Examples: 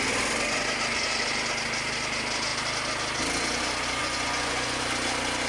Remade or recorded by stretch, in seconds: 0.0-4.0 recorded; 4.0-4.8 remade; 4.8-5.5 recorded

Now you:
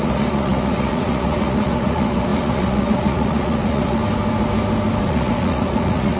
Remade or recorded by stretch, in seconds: 0.0-4.0 remade; 4.0-5.0 recorded; 5.0-6.2 remade

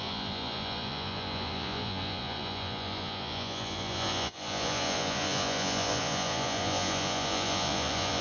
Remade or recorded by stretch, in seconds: 0.0-8.2 remade

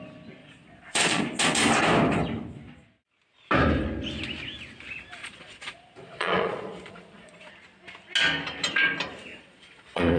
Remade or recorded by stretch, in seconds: 0.0-0.4 recorded; 0.4-1.2 remade; 1.2-5.2 recorded; 5.2-7.5 remade; 7.5-9.3 recorded; 9.3-10.2 remade

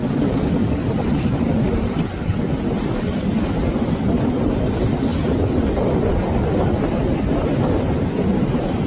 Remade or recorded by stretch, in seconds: 0.0-8.9 recorded

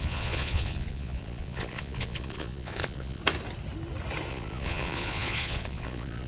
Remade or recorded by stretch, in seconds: 0.0-3.2 remade; 3.2-4.3 recorded; 4.3-6.3 remade

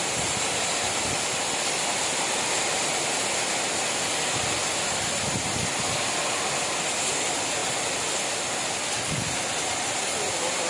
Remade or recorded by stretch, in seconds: 0.0-10.7 recorded

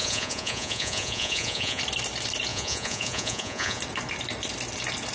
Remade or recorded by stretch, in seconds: 0.0-1.8 remade; 1.8-2.5 recorded; 2.5-3.8 remade; 3.8-5.1 recorded